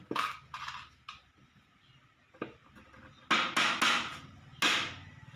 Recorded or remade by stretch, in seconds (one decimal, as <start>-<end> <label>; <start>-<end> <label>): 0.0-5.4 recorded